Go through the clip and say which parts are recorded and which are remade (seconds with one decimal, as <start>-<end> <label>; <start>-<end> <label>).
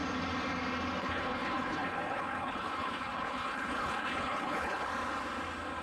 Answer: 0.0-1.0 recorded; 1.0-4.9 remade; 4.9-5.8 recorded